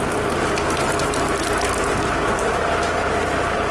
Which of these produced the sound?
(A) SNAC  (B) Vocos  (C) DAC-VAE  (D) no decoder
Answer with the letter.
D